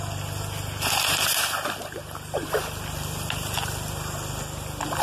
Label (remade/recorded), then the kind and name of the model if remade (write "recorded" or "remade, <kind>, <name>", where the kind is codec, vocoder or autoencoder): recorded